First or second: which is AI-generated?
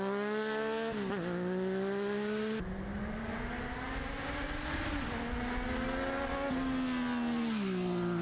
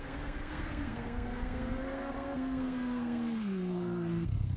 second